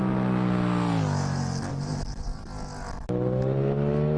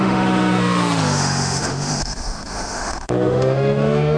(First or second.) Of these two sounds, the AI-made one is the second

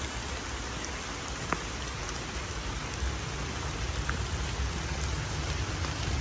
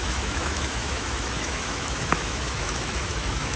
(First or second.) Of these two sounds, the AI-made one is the second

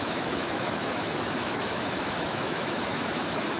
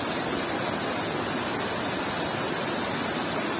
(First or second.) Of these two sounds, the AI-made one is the first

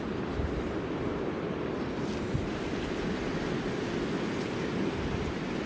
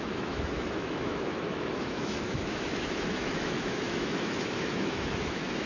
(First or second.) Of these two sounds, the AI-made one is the second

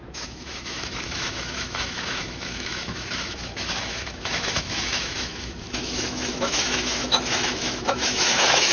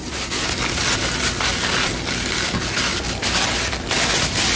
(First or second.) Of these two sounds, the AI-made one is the first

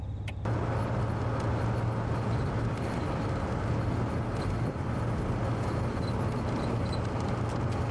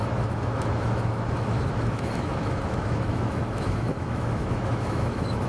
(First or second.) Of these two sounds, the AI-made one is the second